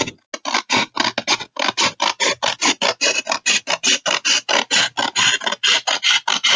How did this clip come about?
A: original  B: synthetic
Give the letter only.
A